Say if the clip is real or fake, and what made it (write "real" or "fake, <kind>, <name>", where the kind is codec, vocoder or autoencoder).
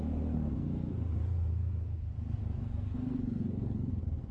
fake, codec, SNAC